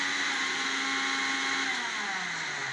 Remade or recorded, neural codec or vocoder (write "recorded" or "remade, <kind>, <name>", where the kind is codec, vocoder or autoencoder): recorded